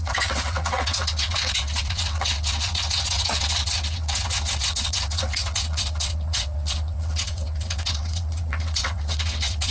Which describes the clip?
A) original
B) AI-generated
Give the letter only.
B